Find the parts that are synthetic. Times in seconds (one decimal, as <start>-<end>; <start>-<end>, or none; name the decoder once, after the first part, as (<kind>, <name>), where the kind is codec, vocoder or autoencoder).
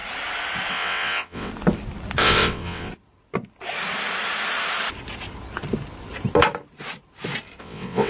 0.7-1.5 (vocoder, WaveNeXt); 2.2-2.9; 7.6-8.1